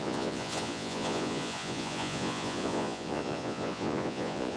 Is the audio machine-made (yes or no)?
yes